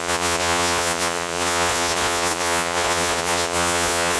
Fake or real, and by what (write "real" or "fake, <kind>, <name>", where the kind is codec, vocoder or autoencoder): fake, vocoder, Vocos